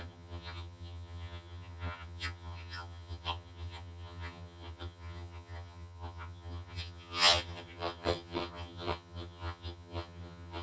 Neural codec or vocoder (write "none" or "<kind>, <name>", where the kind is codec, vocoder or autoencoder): vocoder, HiFi-GAN